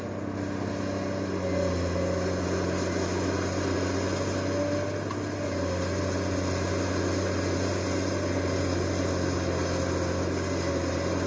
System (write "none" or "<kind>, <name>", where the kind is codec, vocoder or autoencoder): none